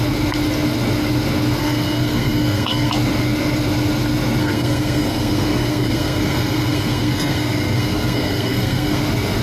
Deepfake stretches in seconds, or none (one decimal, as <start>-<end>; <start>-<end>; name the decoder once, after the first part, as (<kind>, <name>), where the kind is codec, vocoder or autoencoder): 1.6-2.9 (codec, SNAC); 4.4-9.0